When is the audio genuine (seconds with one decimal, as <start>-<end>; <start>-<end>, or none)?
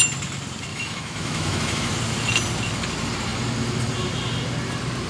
0.0-0.7; 1.9-5.1